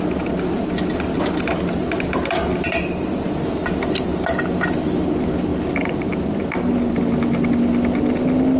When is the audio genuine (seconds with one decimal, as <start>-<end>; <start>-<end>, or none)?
0.0-8.6